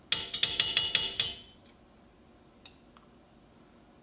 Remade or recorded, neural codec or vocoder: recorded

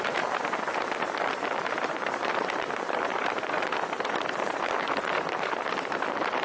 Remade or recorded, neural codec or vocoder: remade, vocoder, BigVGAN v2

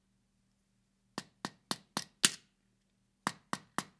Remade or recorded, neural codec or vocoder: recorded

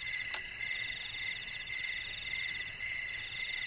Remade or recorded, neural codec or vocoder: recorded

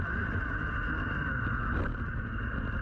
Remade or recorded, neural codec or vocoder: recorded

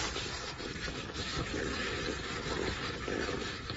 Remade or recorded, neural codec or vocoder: recorded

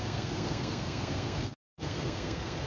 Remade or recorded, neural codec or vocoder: remade, codec, SNAC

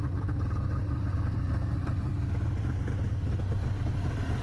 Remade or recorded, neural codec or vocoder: remade, vocoder, BigVGAN v2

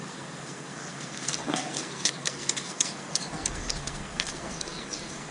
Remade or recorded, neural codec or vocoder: remade, codec, SNAC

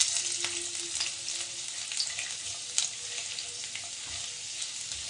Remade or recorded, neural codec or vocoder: recorded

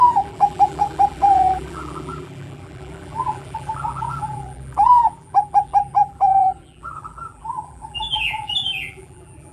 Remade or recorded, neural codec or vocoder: remade, vocoder, BigVGAN v2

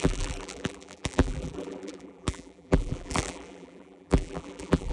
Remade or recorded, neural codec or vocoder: remade, vocoder, BigVGAN v2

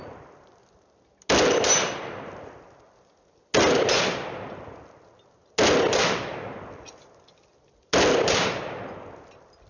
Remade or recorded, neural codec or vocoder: recorded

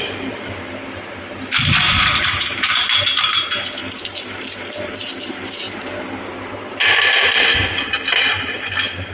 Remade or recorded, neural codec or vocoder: remade, vocoder, BigVGAN v2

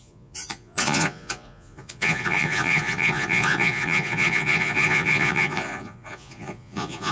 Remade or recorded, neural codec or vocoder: remade, vocoder, Vocos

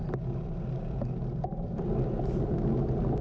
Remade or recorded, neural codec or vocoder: recorded